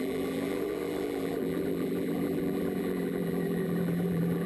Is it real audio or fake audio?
fake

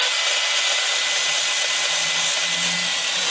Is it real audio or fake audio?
real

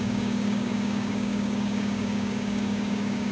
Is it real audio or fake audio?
fake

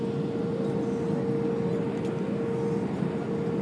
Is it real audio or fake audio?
real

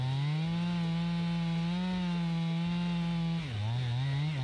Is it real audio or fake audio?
real